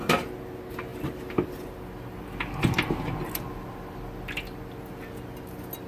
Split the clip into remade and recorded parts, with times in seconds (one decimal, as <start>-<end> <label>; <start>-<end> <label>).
0.0-5.9 recorded